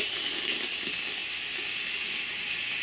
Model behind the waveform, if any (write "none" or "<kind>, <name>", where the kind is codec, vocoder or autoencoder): none